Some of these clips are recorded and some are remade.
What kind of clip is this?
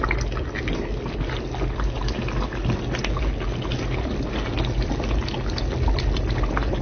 recorded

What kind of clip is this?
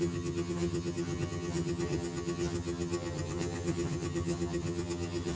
remade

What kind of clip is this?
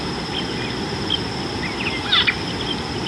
recorded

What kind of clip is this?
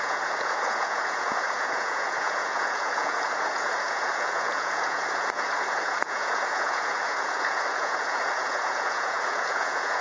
remade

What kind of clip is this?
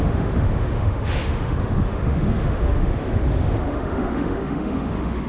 remade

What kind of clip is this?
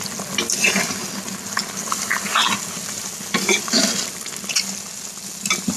recorded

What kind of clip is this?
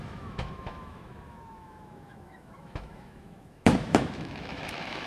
remade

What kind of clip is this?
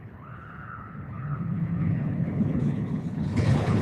remade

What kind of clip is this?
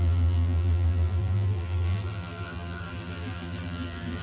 remade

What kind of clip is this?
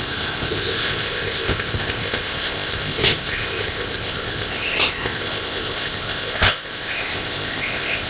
remade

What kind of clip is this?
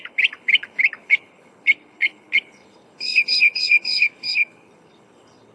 remade